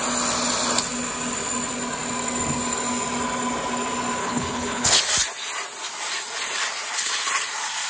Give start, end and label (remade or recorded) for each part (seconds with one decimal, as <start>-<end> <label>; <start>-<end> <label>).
0.0-4.2 recorded; 4.2-5.0 remade; 5.0-7.9 recorded

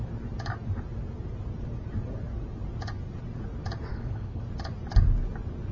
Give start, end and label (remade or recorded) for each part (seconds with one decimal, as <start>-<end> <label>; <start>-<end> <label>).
0.0-3.9 recorded; 3.9-4.4 remade; 4.4-5.7 recorded

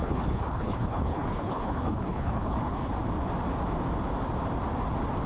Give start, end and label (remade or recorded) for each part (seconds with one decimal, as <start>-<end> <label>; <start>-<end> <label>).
0.0-2.9 remade; 2.9-5.3 recorded